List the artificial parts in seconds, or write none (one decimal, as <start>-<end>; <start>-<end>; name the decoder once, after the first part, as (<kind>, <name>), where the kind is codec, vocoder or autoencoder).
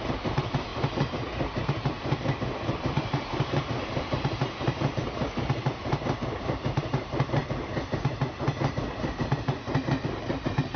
0.0-7.4 (vocoder, BigVGAN v2); 10.1-10.8